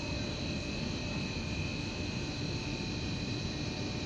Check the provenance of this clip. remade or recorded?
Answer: recorded